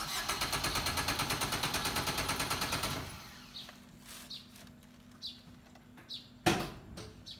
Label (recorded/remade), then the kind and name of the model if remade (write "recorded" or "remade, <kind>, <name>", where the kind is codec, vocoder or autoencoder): recorded